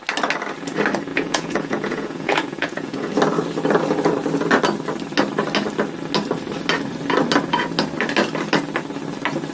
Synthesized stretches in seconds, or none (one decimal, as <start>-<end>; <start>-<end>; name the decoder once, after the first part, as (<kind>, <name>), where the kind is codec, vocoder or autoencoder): 1.1-3.1 (vocoder, Vocos)